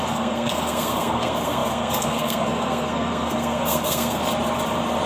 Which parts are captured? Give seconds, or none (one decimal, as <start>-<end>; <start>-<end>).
4.2-5.1